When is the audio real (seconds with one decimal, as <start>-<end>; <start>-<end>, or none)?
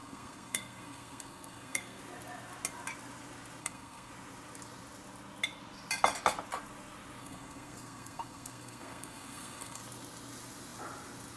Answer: 2.0-3.6; 4.1-7.2; 9.8-11.4